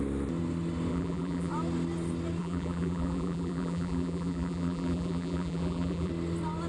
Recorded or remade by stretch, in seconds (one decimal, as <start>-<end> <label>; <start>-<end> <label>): 0.0-0.9 recorded; 0.9-1.5 remade; 1.5-2.4 recorded; 2.4-6.1 remade; 6.1-6.7 recorded